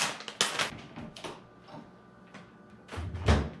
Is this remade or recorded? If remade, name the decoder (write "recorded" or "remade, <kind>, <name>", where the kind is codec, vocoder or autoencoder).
recorded